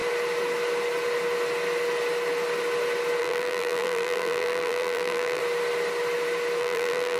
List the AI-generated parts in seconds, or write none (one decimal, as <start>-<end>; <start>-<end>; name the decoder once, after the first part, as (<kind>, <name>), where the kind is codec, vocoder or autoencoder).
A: 3.2-5.4 (vocoder, BigVGAN v2); 6.6-7.2